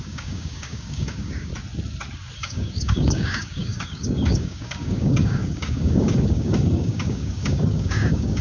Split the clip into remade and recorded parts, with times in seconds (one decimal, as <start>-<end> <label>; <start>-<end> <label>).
0.0-1.5 remade; 1.5-2.4 recorded; 2.4-8.4 remade